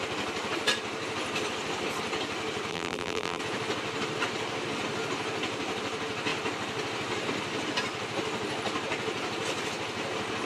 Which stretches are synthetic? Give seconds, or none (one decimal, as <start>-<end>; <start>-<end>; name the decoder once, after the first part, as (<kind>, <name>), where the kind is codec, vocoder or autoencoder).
2.7-3.4 (vocoder, BigVGAN v2)